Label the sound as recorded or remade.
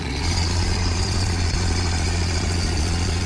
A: remade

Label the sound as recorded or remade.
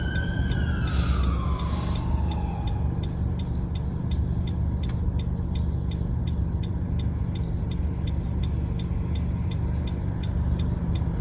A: recorded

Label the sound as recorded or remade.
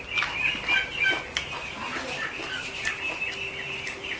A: recorded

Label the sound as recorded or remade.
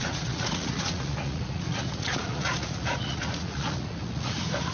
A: remade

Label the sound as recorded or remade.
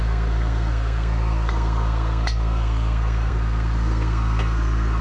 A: remade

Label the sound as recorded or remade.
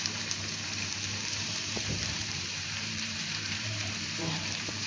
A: remade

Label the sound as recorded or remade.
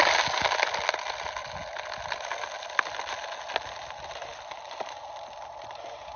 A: recorded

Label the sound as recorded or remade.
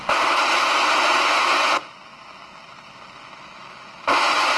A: recorded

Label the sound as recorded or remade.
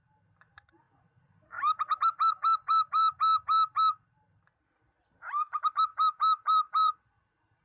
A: remade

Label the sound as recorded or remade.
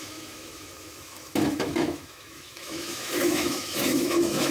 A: remade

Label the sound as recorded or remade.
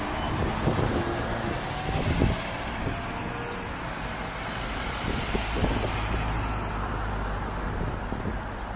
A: recorded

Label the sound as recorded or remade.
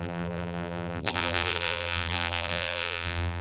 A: remade